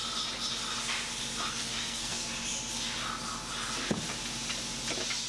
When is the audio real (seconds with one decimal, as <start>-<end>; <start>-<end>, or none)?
0.0-1.5; 2.2-5.3